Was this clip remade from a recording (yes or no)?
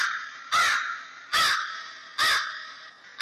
no